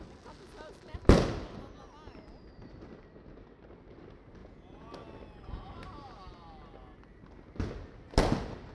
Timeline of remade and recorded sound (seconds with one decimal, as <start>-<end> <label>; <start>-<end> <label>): 0.0-4.4 recorded; 4.4-4.9 remade; 4.9-8.7 recorded